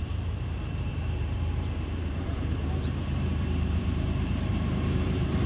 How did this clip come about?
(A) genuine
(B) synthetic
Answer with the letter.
B